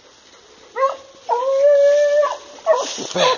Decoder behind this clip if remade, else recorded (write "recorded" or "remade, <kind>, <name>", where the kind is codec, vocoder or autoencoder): recorded